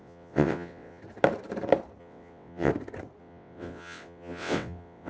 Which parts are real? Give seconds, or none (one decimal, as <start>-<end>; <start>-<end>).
1.0-2.0; 2.7-3.2